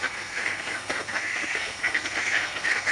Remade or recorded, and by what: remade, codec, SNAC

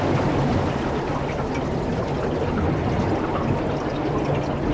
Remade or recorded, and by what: recorded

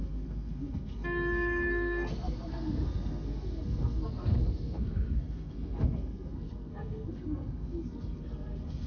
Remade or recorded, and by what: remade, codec, SNAC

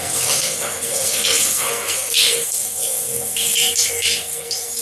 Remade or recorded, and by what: remade, codec, SNAC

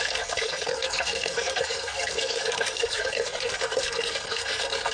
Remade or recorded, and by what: remade, codec, SNAC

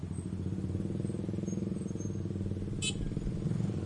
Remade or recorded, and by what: recorded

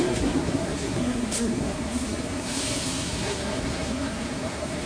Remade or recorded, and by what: remade, codec, SNAC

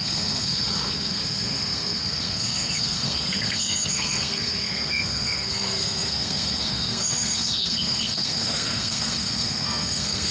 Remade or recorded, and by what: remade, codec, SNAC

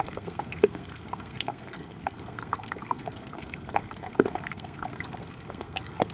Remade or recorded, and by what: remade, codec, SNAC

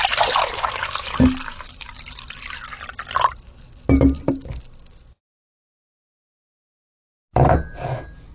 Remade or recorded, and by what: recorded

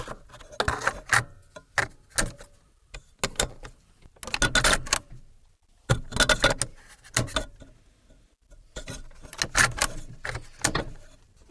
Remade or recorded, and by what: recorded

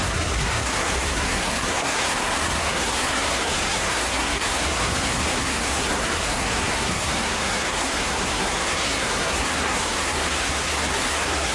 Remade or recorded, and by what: remade, codec, SNAC